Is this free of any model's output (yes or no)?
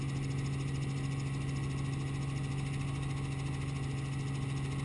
yes